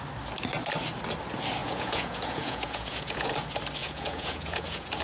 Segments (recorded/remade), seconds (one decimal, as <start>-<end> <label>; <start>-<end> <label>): 0.0-1.6 recorded; 1.6-3.3 remade; 3.3-3.8 recorded; 3.8-5.0 remade